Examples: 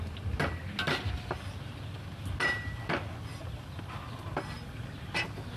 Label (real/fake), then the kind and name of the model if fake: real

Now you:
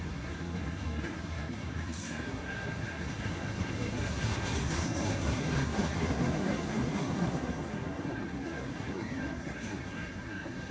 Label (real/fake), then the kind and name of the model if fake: fake, codec, SNAC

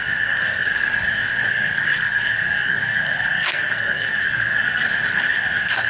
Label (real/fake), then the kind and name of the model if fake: fake, codec, SNAC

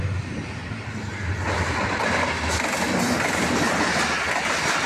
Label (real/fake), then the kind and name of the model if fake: real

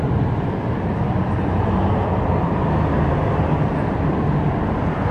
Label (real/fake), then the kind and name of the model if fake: real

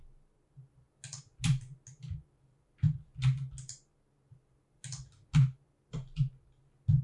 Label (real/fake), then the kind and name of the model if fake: real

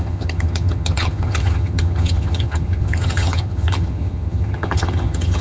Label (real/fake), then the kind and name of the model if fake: fake, vocoder, HiFi-GAN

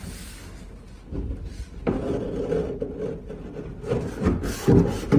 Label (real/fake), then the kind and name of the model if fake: real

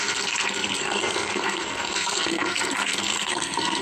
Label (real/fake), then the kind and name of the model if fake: fake, codec, SNAC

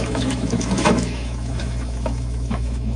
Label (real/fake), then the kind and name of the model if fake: fake, autoencoder, DAC-VAE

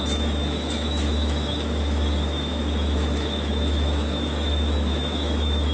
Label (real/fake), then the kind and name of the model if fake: fake, autoencoder, DAC-VAE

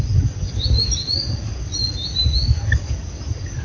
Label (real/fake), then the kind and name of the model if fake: real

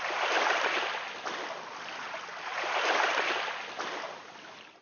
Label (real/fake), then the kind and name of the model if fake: real